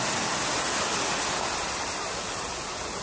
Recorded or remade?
recorded